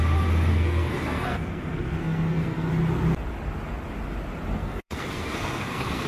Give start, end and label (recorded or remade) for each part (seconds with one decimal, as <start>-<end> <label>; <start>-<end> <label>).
0.0-0.5 recorded; 0.5-2.7 remade; 2.7-4.6 recorded; 4.6-6.1 remade